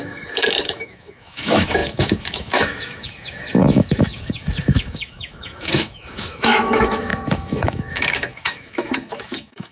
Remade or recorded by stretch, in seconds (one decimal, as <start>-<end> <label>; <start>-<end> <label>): 0.0-9.7 remade